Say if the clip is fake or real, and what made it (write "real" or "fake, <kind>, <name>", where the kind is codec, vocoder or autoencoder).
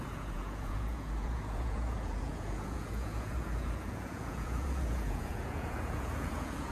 fake, vocoder, Vocos